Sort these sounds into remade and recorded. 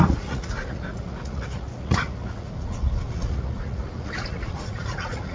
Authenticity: remade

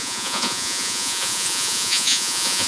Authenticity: remade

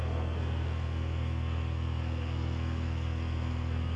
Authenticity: remade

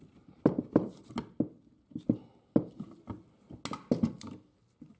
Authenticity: recorded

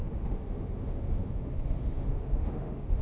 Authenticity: remade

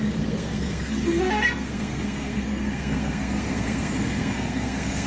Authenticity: remade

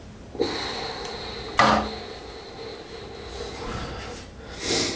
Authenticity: recorded